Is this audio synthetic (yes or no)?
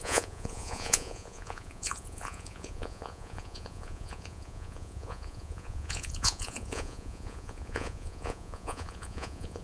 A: yes